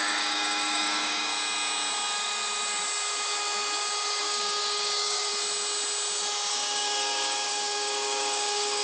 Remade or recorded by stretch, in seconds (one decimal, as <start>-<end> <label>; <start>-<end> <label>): 0.0-1.3 remade; 1.3-4.2 recorded; 4.2-5.3 remade; 5.3-6.5 recorded; 6.5-8.8 remade